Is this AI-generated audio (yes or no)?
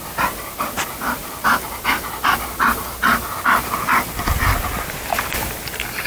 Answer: no